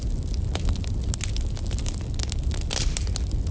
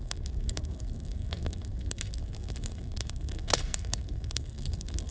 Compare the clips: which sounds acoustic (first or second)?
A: first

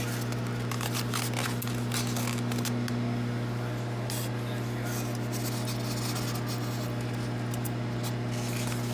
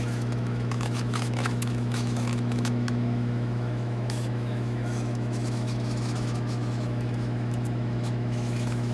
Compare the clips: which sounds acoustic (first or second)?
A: first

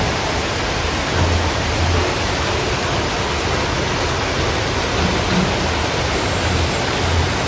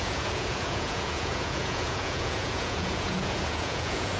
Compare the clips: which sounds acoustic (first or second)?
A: first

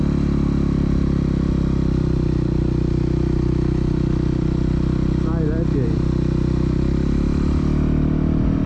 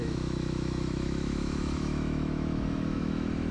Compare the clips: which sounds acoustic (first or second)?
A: first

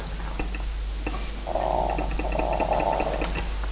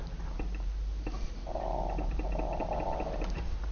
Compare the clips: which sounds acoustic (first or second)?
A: first